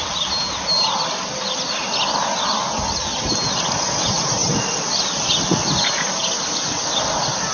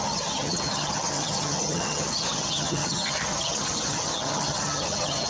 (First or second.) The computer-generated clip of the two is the second